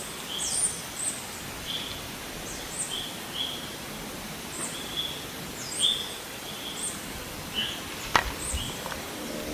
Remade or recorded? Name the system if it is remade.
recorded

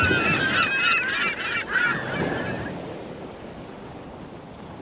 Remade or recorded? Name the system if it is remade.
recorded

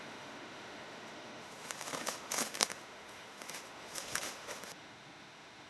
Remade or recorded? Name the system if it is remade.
remade, autoencoder, DAC-VAE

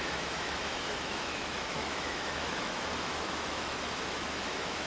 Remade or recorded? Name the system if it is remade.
remade, autoencoder, DAC-VAE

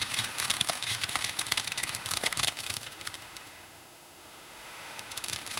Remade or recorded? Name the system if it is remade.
remade, autoencoder, DAC-VAE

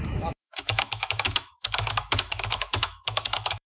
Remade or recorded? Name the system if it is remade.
remade, autoencoder, DAC-VAE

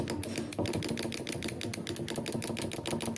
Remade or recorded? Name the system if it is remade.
recorded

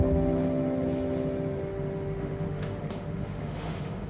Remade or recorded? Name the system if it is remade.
remade, autoencoder, DAC-VAE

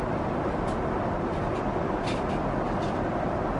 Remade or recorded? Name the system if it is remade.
recorded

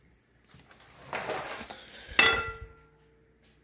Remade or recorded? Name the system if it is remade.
recorded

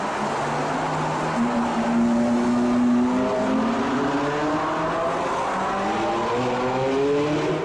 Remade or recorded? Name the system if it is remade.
recorded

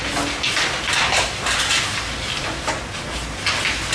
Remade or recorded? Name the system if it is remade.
recorded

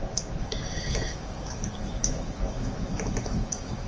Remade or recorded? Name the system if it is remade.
remade, autoencoder, DAC-VAE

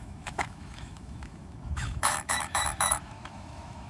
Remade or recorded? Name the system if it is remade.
remade, autoencoder, DAC-VAE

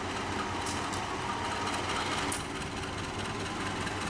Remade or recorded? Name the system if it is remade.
recorded